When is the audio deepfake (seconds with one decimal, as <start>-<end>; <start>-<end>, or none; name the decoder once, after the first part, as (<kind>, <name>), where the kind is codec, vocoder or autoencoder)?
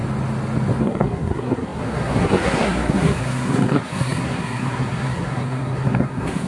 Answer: 0.8-6.5 (codec, SNAC)